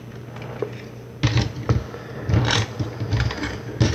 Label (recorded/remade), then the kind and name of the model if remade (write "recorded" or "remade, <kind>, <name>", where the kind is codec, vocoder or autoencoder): recorded